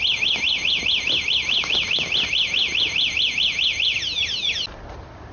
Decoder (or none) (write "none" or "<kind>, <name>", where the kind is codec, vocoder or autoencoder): none